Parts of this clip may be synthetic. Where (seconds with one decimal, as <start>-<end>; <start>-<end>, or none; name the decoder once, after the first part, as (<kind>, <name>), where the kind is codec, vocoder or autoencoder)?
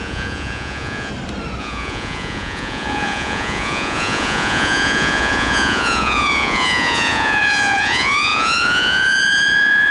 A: 0.0-1.1 (vocoder, Vocos); 1.6-9.9